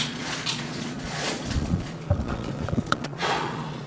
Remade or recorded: remade